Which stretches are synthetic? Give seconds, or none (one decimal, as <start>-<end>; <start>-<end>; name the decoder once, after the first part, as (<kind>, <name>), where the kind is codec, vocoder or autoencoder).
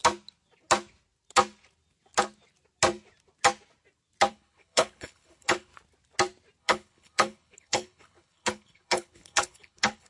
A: 4.3-5.7 (codec, HILCodec); 6.6-10.1